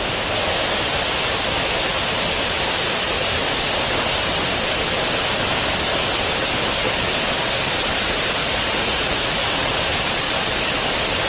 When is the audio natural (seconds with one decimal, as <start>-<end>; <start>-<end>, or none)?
0.0-8.4; 9.8-11.3